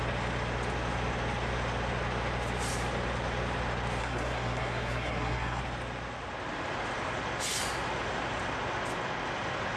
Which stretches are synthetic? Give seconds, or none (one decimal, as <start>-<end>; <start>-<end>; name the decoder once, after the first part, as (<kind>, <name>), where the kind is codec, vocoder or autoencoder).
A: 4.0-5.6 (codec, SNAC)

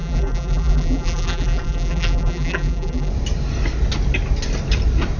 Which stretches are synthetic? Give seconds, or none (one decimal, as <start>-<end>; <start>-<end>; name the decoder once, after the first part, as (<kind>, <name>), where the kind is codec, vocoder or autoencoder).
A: 0.0-3.1 (vocoder, BigVGAN v2)

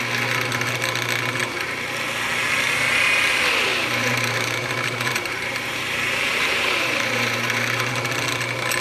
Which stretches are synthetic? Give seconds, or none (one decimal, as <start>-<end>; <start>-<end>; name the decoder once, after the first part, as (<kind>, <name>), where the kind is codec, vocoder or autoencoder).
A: 3.7-7.9 (vocoder, BigVGAN v2)

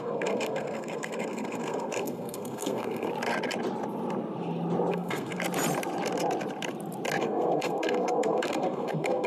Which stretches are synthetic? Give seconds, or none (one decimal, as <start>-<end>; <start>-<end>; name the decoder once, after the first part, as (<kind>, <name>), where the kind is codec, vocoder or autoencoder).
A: 0.0-3.1 (codec, SNAC); 4.9-5.4; 7.2-9.3

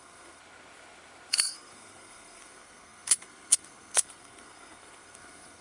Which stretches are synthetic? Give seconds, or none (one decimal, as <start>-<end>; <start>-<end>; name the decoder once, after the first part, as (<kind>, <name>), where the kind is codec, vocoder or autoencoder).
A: 0.0-0.4 (codec, SNAC); 1.3-5.6

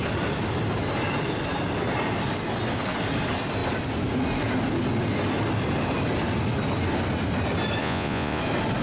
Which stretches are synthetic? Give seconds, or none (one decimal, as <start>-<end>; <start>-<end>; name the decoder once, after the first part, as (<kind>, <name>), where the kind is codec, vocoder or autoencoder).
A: 7.8-8.4 (vocoder, Vocos)